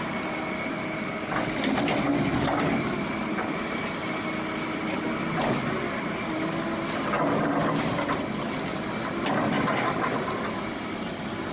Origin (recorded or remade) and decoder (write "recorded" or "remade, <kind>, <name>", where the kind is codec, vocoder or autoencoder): recorded